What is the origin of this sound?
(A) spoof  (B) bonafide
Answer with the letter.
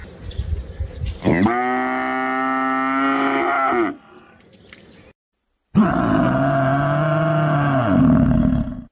B